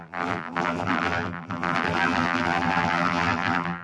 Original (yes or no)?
no